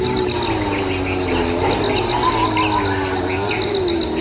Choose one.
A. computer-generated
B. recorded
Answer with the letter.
B